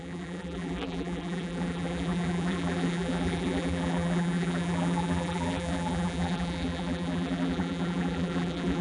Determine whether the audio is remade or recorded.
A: remade